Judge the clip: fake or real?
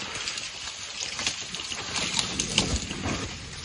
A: real